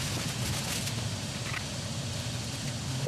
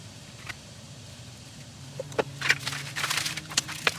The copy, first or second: second